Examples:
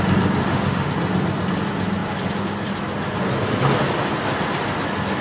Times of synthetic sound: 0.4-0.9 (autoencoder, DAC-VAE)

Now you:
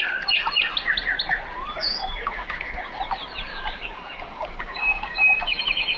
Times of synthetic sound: 2.0-2.8 (codec, DAC); 3.5-5.6

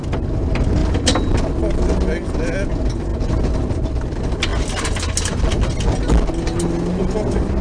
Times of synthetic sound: none

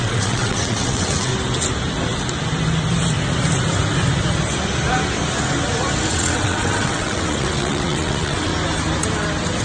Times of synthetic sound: 0.0-1.3 (vocoder, WaveNeXt); 6.1-8.5

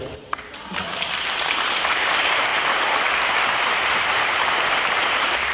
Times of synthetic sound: 0.0-0.5 (vocoder, BigVGAN v2); 1.1-2.5; 3.6-5.5

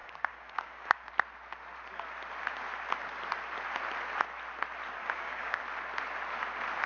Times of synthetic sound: 0.0-1.1 (codec, DAC); 5.0-5.6

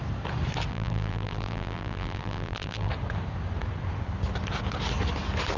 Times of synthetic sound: 0.7-2.9 (vocoder, BigVGAN v2)

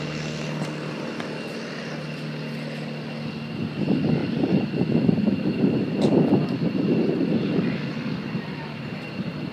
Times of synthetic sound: none